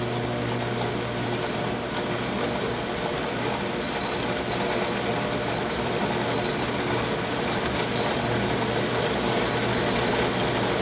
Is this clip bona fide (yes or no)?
yes